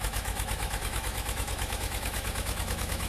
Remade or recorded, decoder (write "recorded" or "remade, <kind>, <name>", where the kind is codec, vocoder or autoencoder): remade, autoencoder, DAC-VAE